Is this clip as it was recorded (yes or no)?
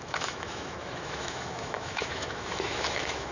no